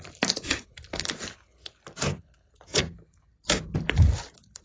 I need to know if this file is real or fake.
fake